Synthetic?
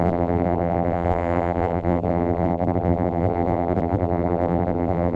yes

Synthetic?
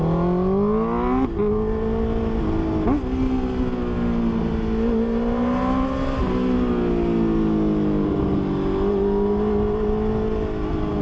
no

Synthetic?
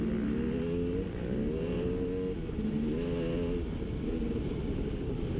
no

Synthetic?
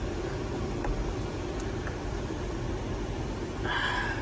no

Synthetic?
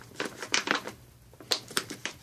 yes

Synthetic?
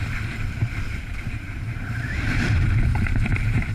yes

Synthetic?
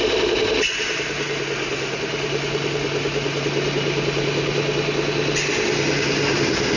no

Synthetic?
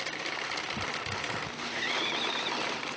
no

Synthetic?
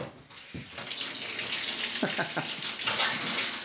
no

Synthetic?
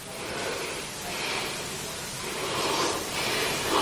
no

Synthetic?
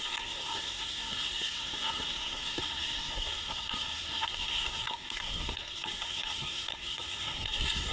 yes